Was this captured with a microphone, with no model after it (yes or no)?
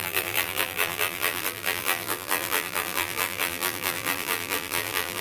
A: no